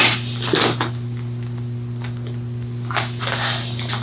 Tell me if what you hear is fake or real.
real